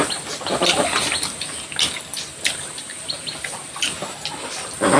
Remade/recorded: recorded